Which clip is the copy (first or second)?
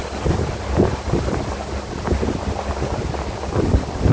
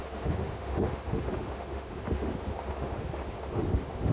second